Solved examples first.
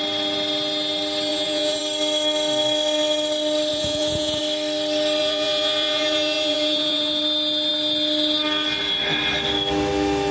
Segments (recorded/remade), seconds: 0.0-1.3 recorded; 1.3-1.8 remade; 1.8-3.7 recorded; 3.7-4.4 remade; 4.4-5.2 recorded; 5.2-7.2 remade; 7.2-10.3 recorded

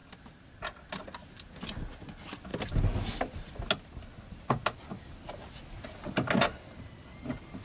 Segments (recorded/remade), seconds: 0.0-7.6 recorded